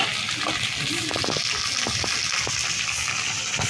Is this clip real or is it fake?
real